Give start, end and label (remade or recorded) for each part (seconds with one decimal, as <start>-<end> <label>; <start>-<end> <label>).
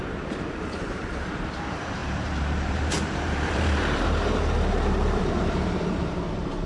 0.0-6.7 remade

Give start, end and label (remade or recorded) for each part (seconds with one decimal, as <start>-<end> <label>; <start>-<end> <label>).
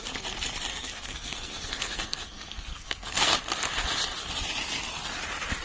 0.0-0.7 recorded; 0.7-3.4 remade; 3.4-5.6 recorded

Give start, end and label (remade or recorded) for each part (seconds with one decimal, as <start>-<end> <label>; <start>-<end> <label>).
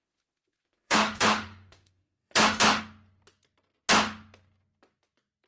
0.0-2.8 remade; 2.8-5.5 recorded